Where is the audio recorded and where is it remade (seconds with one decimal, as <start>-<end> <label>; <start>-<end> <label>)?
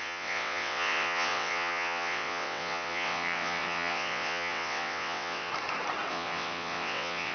0.0-5.5 remade; 5.5-6.1 recorded; 6.1-7.3 remade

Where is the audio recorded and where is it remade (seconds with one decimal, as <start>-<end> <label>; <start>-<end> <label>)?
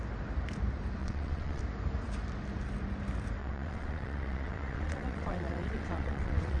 0.0-1.0 recorded; 1.0-1.6 remade; 1.6-3.4 recorded; 3.4-6.6 remade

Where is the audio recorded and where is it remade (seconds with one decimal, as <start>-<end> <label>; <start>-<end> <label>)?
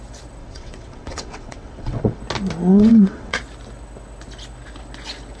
0.0-0.4 recorded; 0.4-2.2 remade; 2.2-2.7 recorded; 2.7-3.4 remade; 3.4-5.4 recorded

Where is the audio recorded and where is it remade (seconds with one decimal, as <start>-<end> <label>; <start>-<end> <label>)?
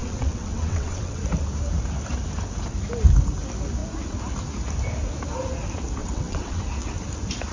0.0-1.2 remade; 1.2-6.0 recorded; 6.0-6.6 remade; 6.6-7.5 recorded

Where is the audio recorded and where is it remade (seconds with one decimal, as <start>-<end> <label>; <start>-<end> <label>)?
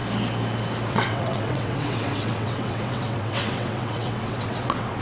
0.0-0.9 recorded; 0.9-5.0 remade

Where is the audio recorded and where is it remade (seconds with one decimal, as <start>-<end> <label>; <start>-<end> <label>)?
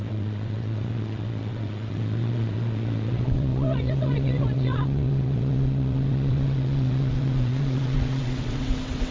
0.0-9.1 remade